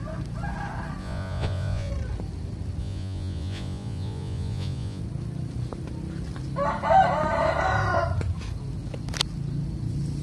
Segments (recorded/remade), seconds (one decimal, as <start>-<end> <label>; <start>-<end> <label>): 0.0-1.0 recorded; 1.0-1.9 remade; 1.9-2.8 recorded; 2.8-5.0 remade; 5.0-10.2 recorded